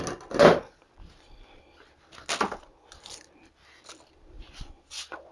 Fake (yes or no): no